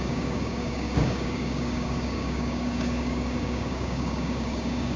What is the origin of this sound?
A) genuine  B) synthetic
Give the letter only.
B